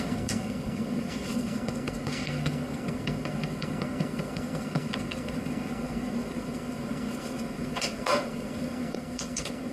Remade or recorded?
remade